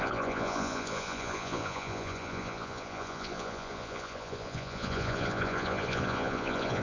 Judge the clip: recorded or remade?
remade